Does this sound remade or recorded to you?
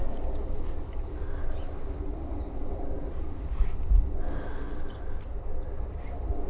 recorded